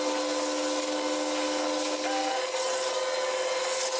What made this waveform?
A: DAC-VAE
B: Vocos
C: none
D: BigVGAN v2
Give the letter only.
C